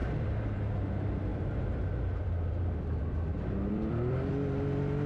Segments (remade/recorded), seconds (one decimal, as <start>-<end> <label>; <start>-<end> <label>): 0.0-0.7 remade; 0.7-1.3 recorded; 1.3-4.3 remade; 4.3-5.1 recorded